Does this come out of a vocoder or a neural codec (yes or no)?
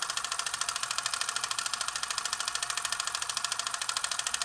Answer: no